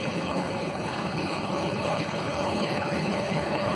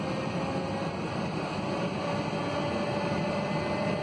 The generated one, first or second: first